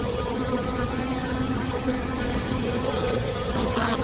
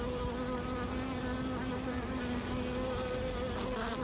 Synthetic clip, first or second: first